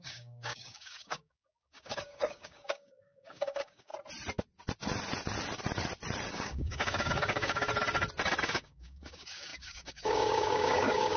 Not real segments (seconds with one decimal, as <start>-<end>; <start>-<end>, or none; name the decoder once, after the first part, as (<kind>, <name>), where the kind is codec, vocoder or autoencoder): 0.0-3.9 (codec, DAC); 6.3-7.7; 8.4-11.2